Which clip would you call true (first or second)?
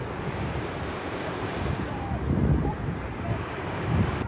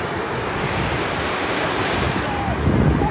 second